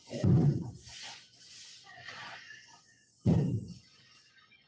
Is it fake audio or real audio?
fake